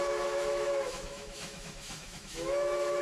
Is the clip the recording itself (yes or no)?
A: no